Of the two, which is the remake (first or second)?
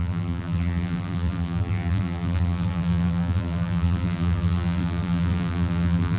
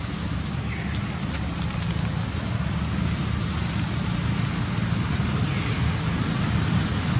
first